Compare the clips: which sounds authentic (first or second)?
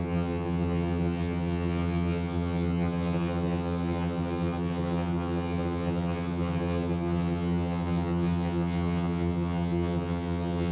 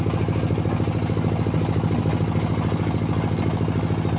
second